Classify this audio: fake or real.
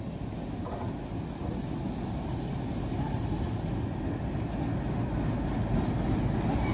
real